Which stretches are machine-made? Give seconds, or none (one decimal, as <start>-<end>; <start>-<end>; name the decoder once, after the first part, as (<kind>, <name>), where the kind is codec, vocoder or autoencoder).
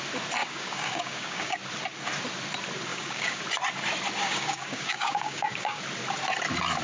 0.4-1.6 (codec, DAC); 2.9-3.4; 4.2-5.8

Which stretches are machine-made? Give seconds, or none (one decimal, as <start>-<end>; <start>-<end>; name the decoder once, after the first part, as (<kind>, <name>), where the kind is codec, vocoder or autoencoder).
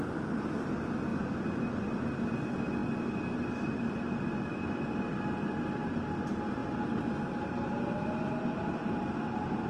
none